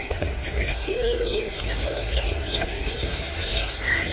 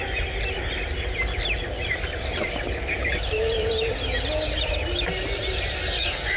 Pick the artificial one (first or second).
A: first